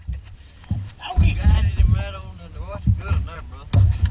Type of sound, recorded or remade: remade